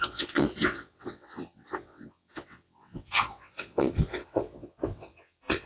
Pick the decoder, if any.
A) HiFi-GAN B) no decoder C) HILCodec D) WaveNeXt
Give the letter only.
D